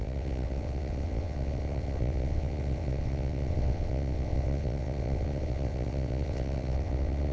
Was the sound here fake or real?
fake